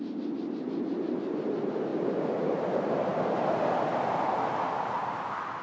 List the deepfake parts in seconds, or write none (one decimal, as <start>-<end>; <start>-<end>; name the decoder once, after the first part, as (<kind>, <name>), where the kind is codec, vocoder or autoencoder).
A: none